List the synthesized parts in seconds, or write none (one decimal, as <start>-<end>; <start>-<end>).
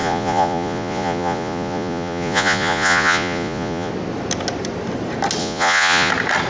0.0-3.9; 5.4-6.1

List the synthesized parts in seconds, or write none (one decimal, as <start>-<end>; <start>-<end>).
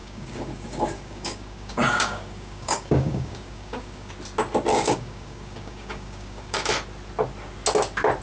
0.0-4.1; 4.7-6.7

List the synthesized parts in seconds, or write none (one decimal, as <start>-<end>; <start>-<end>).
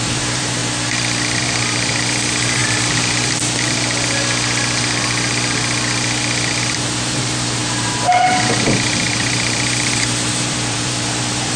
0.0-0.6; 1.4-2.6; 6.6-11.6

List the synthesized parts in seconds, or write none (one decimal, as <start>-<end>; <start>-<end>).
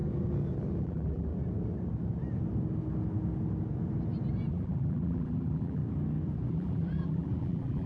0.8-1.3; 4.5-5.8; 6.5-7.9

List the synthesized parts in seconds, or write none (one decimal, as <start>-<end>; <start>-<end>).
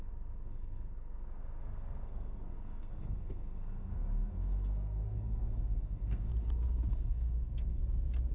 0.0-6.3; 6.9-7.8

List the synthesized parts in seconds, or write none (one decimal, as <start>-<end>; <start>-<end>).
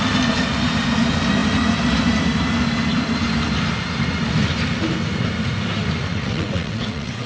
6.1-7.3